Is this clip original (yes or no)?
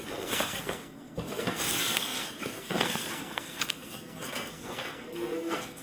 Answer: no